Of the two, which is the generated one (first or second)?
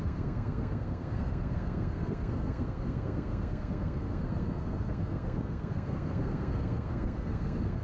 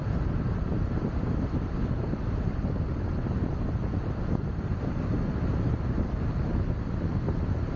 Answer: first